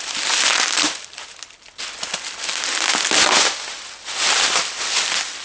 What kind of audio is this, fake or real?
real